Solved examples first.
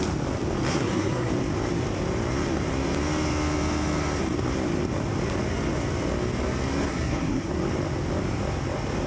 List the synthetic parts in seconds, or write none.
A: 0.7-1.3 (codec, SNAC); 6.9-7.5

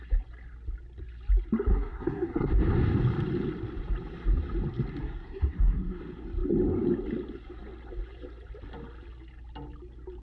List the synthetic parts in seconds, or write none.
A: 1.7-2.5 (codec, SNAC); 5.0-6.0

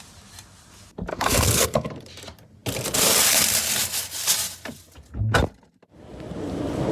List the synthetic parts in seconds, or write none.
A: 1.1-1.9 (codec, SNAC)

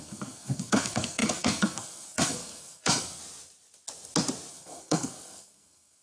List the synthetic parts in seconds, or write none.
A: 0.0-3.2 (codec, SNAC); 4.5-6.0

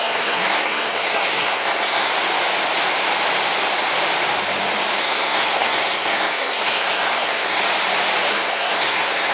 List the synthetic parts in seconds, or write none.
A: 0.0-2.1 (codec, SNAC); 5.0-7.6; 8.3-9.3

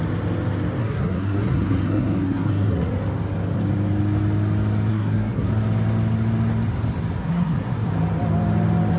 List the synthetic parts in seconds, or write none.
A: 0.8-2.9 (codec, SNAC); 4.9-5.5; 7.2-7.9

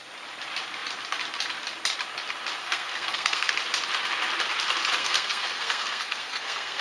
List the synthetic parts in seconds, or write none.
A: 2.6-3.5 (codec, SNAC); 5.0-6.8